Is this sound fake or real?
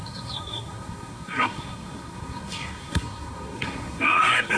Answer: fake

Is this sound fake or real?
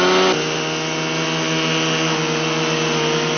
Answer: real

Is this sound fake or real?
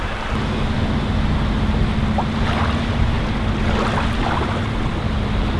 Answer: real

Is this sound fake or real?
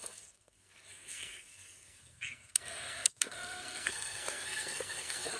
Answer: fake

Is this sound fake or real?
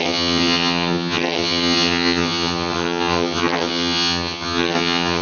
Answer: fake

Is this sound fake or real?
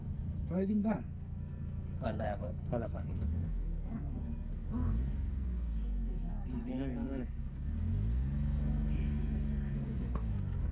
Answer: fake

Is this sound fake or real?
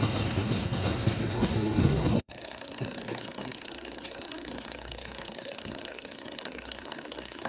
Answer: fake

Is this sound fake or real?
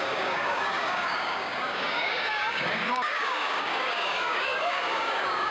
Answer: fake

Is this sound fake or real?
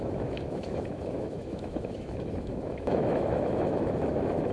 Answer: fake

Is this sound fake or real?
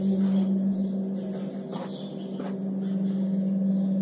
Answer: real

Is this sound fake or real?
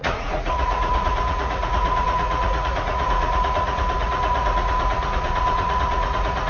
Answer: fake